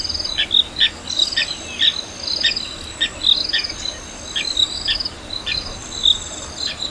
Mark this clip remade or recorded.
recorded